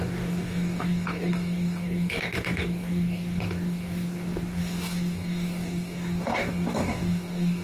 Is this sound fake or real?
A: fake